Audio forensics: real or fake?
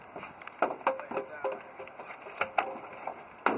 real